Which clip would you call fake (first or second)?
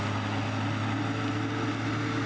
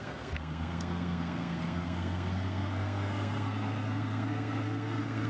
second